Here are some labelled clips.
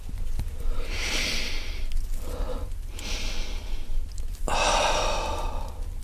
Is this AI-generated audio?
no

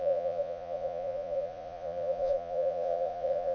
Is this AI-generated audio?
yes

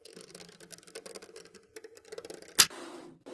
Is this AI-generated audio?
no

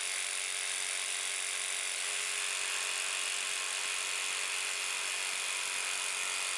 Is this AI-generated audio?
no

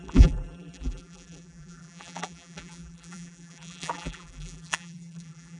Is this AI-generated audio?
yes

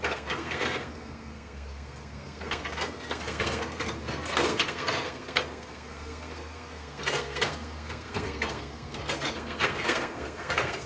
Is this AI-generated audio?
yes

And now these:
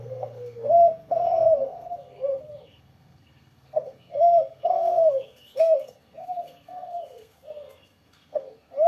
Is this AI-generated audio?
yes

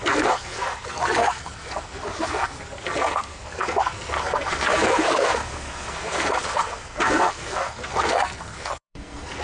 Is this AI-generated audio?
yes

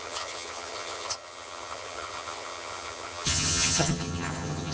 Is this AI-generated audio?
yes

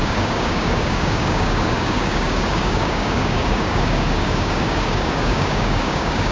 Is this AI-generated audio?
yes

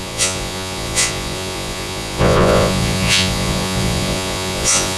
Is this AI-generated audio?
yes